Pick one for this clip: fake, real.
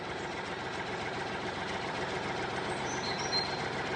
fake